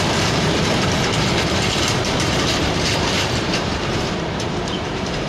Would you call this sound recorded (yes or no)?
no